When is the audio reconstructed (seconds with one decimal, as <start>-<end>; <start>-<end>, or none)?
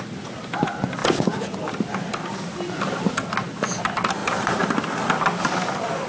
4.2-4.7